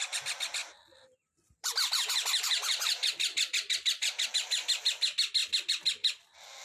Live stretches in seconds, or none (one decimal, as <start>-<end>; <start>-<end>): 0.0-0.6; 4.3-5.4